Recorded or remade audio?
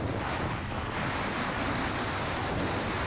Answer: recorded